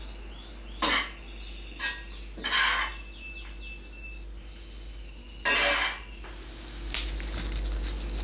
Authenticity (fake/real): real